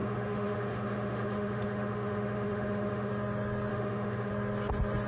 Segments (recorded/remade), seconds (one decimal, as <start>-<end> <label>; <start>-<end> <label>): 0.0-3.1 remade; 3.1-3.7 recorded; 3.7-4.3 remade; 4.3-5.1 recorded